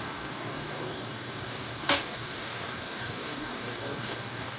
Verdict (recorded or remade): remade